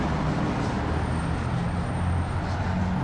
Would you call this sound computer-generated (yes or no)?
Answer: no